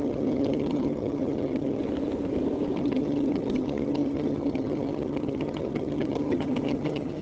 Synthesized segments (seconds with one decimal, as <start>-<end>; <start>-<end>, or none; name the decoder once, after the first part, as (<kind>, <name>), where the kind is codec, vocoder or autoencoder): 0.0-1.8 (vocoder, HiFi-GAN); 2.8-7.2

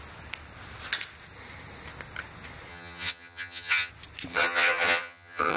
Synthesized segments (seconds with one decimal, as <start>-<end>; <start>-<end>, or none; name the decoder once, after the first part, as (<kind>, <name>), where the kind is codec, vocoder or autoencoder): 2.7-3.9 (vocoder, HiFi-GAN); 4.3-5.6